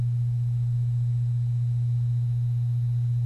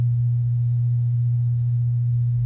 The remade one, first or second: second